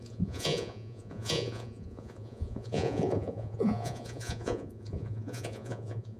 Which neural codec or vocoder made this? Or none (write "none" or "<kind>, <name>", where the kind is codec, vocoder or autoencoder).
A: vocoder, Vocos